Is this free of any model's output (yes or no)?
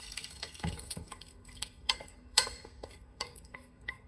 no